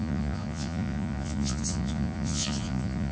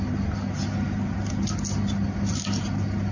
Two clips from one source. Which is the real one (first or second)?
second